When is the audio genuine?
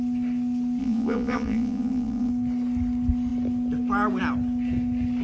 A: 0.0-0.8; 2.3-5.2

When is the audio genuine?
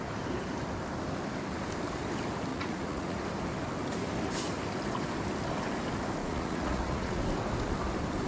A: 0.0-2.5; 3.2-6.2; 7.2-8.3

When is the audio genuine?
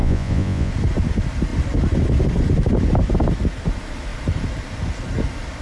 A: 0.7-5.6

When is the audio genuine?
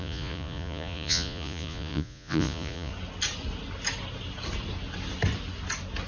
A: 2.9-6.1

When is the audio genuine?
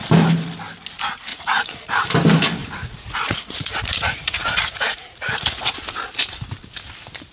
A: 0.0-1.3; 2.1-2.6; 5.7-7.3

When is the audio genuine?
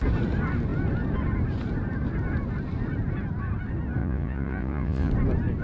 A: 0.0-4.0; 5.1-5.6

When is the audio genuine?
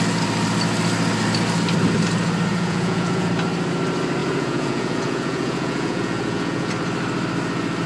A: 0.0-2.5; 3.3-4.2; 6.7-7.9